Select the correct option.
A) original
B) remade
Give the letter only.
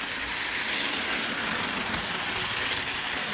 A